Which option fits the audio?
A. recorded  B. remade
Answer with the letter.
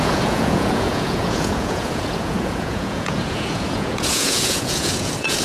B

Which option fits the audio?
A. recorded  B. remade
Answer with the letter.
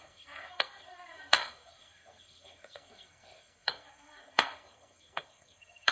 B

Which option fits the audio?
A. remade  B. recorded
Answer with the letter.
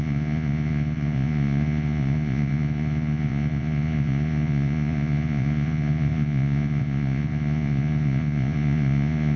A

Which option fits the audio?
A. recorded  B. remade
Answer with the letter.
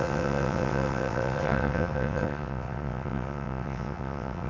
B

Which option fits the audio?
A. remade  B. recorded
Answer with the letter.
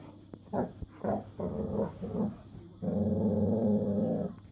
B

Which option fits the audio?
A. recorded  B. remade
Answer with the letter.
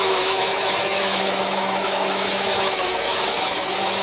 B